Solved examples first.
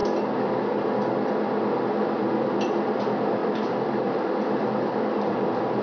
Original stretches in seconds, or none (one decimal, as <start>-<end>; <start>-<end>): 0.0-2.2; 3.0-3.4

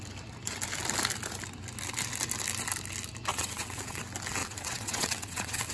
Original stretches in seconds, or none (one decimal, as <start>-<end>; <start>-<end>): 0.0-3.3; 4.0-4.4

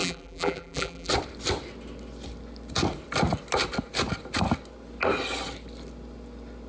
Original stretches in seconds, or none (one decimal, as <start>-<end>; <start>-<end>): 1.1-6.7

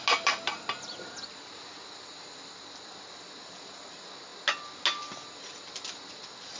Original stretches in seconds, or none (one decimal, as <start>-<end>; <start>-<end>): 0.0-6.6